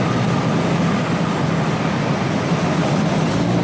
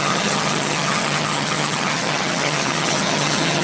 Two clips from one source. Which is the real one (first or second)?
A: first